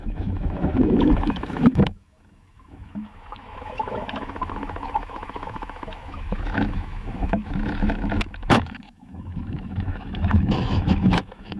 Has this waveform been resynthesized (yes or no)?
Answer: yes